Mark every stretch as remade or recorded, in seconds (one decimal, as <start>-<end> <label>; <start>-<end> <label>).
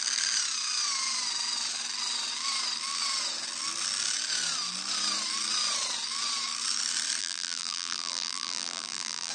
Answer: 0.0-7.2 recorded; 7.2-9.3 remade